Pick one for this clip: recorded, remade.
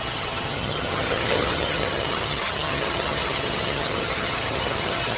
remade